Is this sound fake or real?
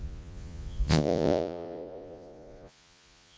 fake